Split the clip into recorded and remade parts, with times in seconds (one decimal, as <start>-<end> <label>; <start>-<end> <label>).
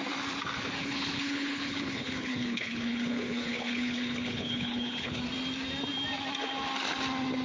0.0-0.8 recorded; 0.8-5.2 remade; 5.2-7.4 recorded